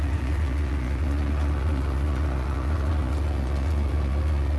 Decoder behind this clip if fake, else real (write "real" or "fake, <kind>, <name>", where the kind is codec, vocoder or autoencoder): fake, vocoder, Vocos